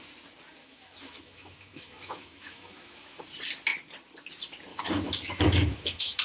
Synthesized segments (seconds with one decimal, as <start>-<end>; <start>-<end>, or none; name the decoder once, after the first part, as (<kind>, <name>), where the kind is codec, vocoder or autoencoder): 0.6-3.2 (autoencoder, DAC-VAE); 4.7-6.2